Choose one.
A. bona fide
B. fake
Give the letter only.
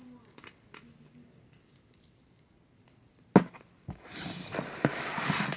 A